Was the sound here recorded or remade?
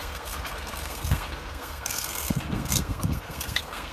remade